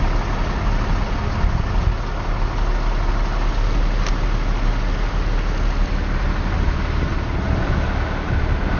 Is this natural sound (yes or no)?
yes